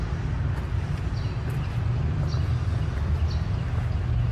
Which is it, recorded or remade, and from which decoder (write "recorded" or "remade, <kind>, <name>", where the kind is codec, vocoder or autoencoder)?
recorded